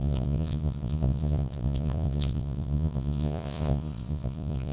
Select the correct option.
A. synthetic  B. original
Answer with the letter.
A